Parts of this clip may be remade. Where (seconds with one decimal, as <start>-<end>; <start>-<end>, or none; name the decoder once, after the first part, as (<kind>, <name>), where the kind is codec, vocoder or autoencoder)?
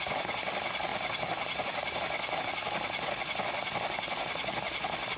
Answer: 0.9-2.4 (vocoder, BigVGAN v2)